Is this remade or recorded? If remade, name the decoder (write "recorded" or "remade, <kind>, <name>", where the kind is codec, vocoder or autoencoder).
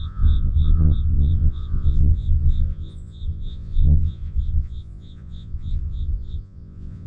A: remade, vocoder, Vocos